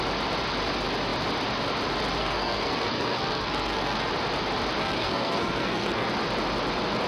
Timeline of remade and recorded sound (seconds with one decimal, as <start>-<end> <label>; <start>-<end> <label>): 0.0-2.2 recorded; 2.2-4.1 remade; 4.1-4.8 recorded; 4.8-6.1 remade; 6.1-7.1 recorded